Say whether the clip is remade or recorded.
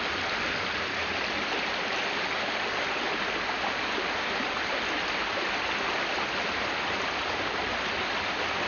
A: recorded